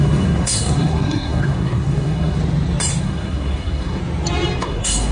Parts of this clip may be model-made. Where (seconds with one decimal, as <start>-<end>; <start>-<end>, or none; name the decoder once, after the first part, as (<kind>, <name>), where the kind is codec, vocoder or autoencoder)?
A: 0.0-2.4 (codec, SNAC); 3.0-4.0; 4.6-5.1